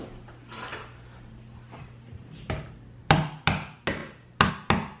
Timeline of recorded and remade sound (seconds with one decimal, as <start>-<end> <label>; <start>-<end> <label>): 0.0-5.0 recorded